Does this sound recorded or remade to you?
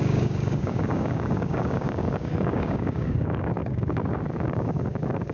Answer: remade